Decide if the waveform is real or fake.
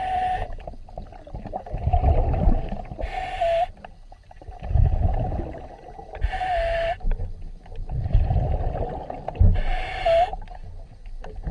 real